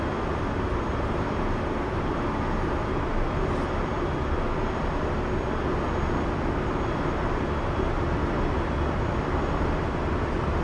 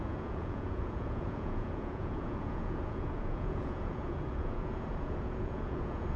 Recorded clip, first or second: first